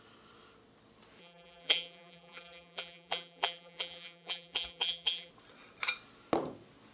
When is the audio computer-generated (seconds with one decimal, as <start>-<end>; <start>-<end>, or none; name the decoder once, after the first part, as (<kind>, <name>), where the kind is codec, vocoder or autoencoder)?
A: 1.2-5.3 (vocoder, BigVGAN v2)